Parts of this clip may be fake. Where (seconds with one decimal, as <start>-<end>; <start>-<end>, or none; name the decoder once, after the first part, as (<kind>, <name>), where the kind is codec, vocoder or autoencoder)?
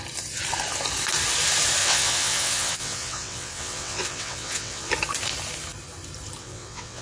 1.8-4.9 (vocoder, WaveNeXt); 6.4-7.0